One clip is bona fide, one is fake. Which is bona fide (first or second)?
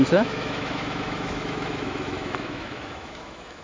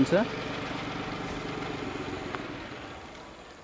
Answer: second